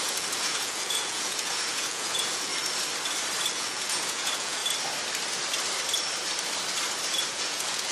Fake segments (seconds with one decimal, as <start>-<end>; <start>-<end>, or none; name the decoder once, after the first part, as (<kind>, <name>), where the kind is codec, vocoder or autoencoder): 0.0-2.5 (vocoder, Vocos); 3.5-4.6; 7.3-7.9